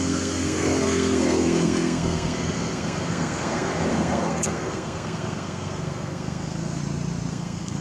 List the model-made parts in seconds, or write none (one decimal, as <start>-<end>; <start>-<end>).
0.0-6.8; 7.3-7.8